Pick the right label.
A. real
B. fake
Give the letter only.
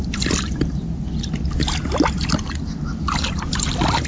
A